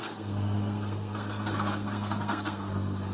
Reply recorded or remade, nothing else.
remade